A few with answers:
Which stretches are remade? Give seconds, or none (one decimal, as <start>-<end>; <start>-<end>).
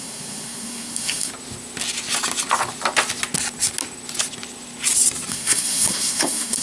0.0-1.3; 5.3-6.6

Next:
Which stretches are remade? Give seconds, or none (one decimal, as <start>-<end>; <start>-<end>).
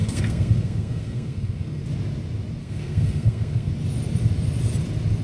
0.0-1.8; 2.6-3.7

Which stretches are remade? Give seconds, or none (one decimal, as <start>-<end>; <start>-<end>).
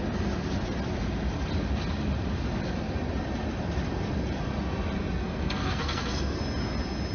5.2-6.4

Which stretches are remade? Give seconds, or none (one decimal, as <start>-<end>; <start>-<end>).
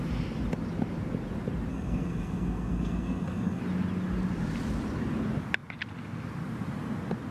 1.7-3.6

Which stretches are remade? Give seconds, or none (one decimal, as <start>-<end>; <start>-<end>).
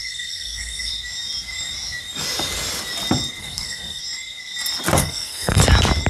0.0-0.9; 3.4-4.0; 5.0-5.6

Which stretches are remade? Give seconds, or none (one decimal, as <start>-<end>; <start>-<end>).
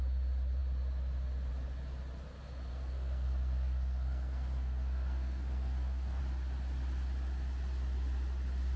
2.7-6.2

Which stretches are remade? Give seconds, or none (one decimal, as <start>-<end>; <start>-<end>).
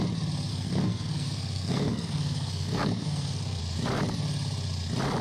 0.5-3.6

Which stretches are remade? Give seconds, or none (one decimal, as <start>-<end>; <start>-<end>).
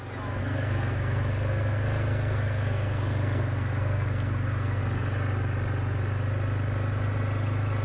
0.4-4.8